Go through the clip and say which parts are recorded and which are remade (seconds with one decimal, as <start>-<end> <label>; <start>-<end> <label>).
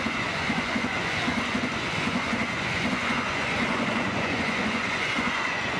0.0-5.8 remade